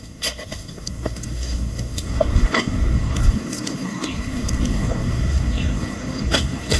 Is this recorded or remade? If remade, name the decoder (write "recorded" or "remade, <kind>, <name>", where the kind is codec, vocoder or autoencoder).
remade, codec, SNAC